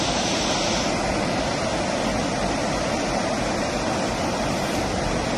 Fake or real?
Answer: real